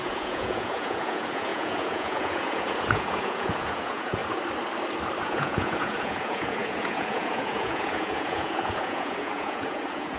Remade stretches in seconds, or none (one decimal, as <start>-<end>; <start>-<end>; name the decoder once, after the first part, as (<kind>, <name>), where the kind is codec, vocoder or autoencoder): 0.0-4.2 (vocoder, Vocos); 5.2-10.2